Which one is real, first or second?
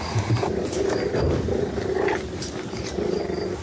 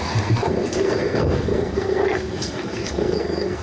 first